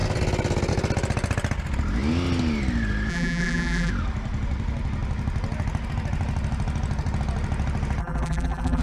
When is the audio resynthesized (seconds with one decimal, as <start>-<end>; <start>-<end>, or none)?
3.1-3.9; 8.0-8.8